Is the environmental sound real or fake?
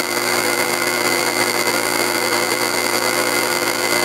fake